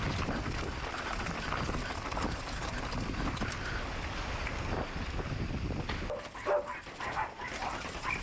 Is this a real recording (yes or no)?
no